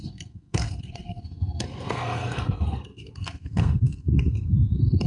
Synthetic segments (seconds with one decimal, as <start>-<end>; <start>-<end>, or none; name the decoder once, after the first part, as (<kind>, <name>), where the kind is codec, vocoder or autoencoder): 0.0-5.1 (codec, SNAC)